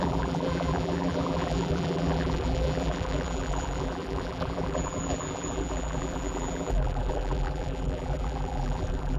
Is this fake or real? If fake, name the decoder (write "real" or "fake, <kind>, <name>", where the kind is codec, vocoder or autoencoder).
fake, vocoder, BigVGAN v2